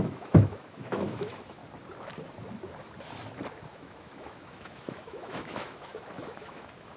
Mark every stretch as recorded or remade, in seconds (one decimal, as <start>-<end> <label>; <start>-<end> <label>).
0.0-1.6 remade; 1.6-3.7 recorded; 3.7-7.0 remade